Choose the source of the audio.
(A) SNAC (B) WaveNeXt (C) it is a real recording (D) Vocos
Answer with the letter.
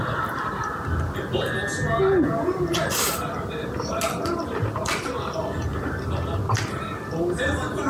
C